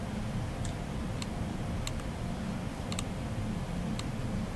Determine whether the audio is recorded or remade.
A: remade